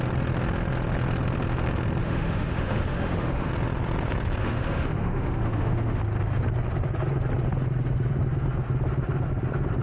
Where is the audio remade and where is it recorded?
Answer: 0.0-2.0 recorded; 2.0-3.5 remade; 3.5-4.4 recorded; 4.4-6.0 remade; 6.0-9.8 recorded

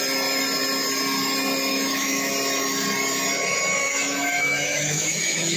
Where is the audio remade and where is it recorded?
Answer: 0.0-1.7 recorded; 1.7-2.3 remade; 2.3-3.8 recorded; 3.8-5.6 remade

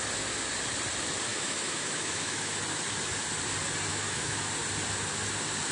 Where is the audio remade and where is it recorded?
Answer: 0.0-1.3 recorded; 1.3-2.6 remade; 2.6-3.9 recorded; 3.9-4.4 remade; 4.4-5.7 recorded

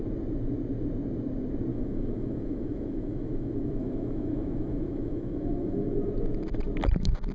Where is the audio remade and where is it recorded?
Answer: 0.0-1.7 recorded; 1.7-6.1 remade; 6.1-7.3 recorded

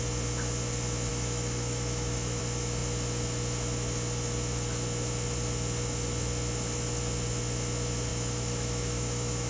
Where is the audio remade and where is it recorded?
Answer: 0.0-1.1 recorded; 1.1-2.4 remade; 2.4-8.1 recorded; 8.1-9.5 remade